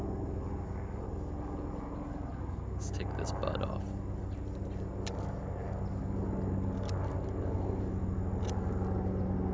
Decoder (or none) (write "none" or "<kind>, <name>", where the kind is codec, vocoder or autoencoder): none